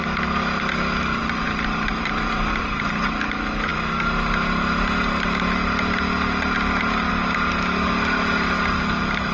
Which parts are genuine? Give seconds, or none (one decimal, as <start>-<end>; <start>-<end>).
0.0-1.2; 2.6-9.3